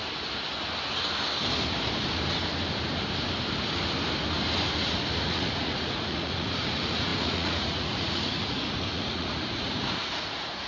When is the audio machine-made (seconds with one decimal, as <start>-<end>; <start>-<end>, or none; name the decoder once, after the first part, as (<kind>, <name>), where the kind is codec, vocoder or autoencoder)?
5.1-10.7 (vocoder, Vocos)